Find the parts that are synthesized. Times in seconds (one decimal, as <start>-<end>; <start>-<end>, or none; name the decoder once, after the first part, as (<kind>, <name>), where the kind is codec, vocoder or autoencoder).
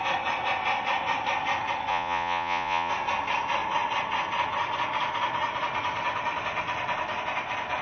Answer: 1.9-2.9 (vocoder, Vocos)